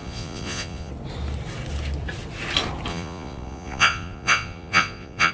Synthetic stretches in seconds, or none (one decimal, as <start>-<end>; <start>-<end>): 0.0-0.9; 2.9-5.3